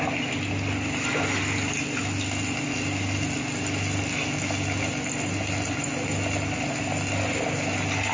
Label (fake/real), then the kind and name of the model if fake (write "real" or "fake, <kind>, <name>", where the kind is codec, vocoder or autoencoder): real